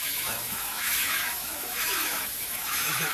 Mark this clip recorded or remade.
remade